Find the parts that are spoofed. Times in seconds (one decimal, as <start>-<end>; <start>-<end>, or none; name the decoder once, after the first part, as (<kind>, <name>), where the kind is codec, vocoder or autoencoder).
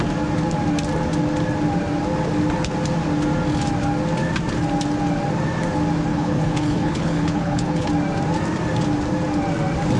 6.1-7.9 (codec, HILCodec)